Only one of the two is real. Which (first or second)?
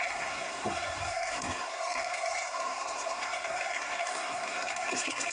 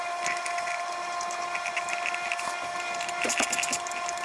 second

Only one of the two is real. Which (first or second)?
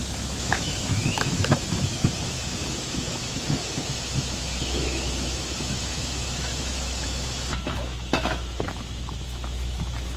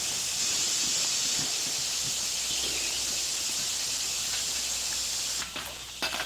second